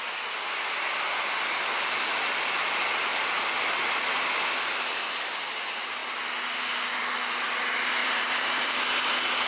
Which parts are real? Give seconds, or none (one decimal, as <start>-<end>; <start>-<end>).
0.0-3.1; 4.0-8.0; 8.7-9.5